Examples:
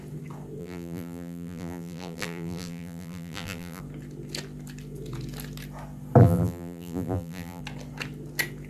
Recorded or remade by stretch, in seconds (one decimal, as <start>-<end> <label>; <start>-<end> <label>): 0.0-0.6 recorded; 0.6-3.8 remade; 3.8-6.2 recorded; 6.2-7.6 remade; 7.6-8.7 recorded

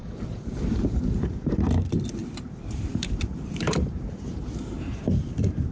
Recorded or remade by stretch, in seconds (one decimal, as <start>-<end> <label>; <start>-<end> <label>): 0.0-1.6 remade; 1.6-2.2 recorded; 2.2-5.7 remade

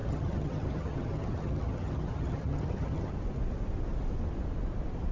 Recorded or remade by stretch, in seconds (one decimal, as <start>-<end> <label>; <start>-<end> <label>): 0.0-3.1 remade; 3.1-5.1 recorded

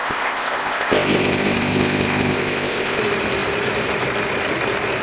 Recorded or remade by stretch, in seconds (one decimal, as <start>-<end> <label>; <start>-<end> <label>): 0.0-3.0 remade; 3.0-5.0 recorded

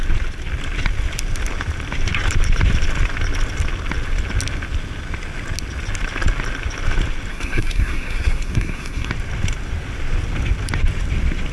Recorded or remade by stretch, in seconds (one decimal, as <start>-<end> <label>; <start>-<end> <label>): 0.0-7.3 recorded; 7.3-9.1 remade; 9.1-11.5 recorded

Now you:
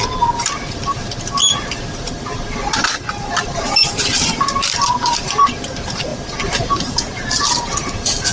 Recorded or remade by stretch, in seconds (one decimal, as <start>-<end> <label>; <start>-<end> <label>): 0.0-8.3 remade